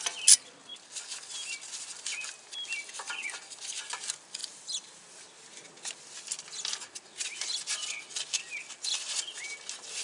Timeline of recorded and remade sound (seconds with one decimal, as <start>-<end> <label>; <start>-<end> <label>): 0.0-10.0 recorded